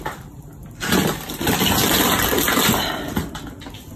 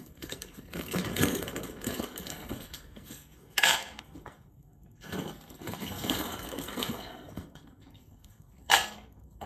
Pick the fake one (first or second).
second